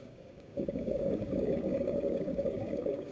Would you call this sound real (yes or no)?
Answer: no